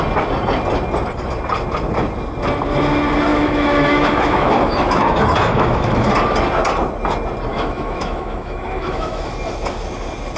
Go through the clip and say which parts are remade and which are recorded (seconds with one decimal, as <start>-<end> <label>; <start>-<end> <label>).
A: 0.0-3.3 recorded; 3.3-6.1 remade; 6.1-7.5 recorded; 7.5-9.3 remade; 9.3-10.4 recorded